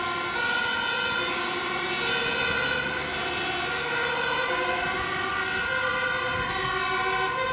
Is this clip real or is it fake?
real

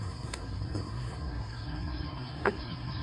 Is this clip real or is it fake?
fake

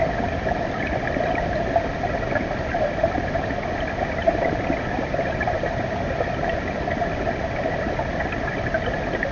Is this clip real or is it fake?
real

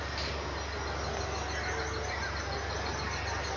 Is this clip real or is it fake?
real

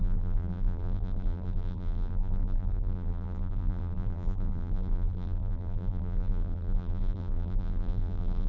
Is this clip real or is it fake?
fake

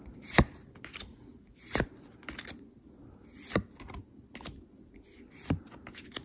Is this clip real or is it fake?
real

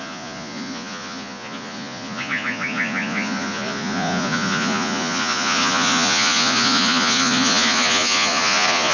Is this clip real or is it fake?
fake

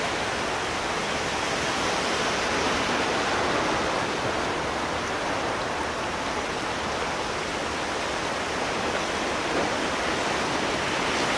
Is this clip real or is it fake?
real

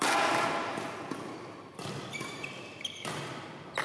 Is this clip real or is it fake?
real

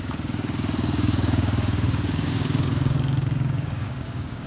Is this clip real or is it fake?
fake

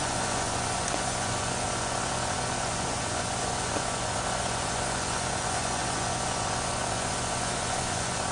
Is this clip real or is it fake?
fake